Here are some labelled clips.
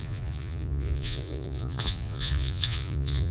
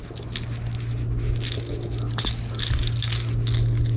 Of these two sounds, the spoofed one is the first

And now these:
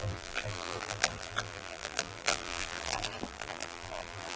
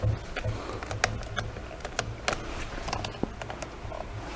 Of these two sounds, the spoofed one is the first